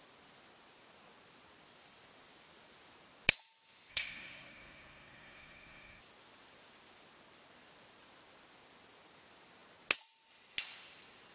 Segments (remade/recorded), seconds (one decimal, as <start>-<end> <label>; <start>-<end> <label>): 0.0-3.9 recorded; 3.9-6.0 remade; 6.0-11.3 recorded